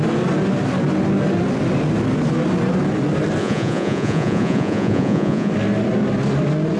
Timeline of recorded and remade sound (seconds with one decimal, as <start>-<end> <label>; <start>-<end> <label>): 0.0-3.4 recorded; 3.4-5.5 remade; 5.5-6.8 recorded